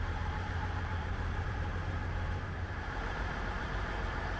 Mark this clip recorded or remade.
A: remade